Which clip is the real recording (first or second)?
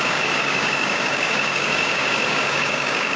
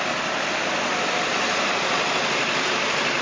second